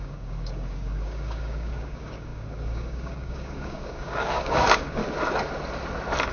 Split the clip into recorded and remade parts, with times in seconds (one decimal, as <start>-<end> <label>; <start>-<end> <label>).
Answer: 0.0-5.0 remade; 5.0-6.3 recorded